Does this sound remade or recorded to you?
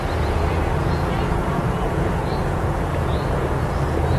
remade